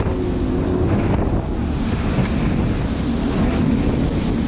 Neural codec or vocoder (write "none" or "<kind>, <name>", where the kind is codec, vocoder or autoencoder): none